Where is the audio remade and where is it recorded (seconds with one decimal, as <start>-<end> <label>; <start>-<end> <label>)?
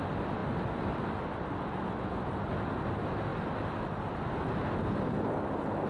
0.0-5.9 recorded